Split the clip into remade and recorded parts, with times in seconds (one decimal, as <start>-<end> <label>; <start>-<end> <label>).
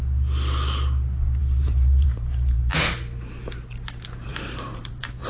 0.0-1.4 recorded; 1.4-2.6 remade; 2.6-4.3 recorded; 4.3-5.3 remade